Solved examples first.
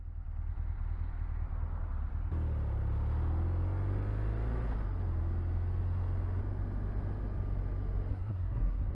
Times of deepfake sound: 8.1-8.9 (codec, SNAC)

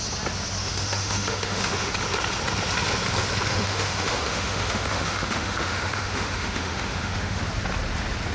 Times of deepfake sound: 0.6-1.9 (autoencoder, DAC-VAE); 3.5-7.4

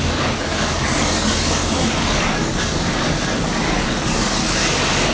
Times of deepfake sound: 0.0-5.1 (codec, DAC)

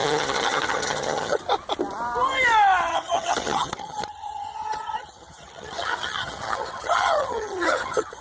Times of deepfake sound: 0.0-1.4 (vocoder, HiFi-GAN); 2.9-8.2

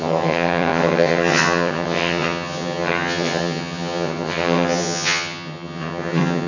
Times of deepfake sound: 0.0-6.5 (vocoder, HiFi-GAN)

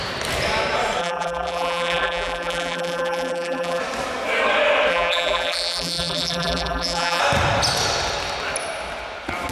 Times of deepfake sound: 1.0-3.8 (vocoder, BigVGAN v2); 4.9-7.2

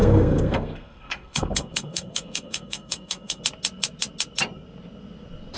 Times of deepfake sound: 0.0-3.4 (codec, SNAC)

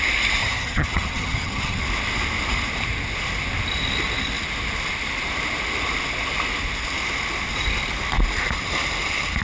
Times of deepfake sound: 0.4-1.8 (vocoder, HiFi-GAN)